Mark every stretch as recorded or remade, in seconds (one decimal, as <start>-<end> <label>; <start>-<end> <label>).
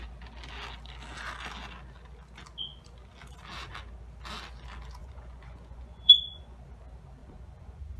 0.0-5.0 recorded; 5.0-6.6 remade; 6.6-7.2 recorded; 7.2-8.0 remade